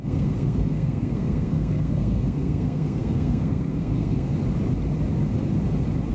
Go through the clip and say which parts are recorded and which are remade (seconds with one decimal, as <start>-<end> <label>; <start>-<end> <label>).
0.0-4.3 remade; 4.3-6.1 recorded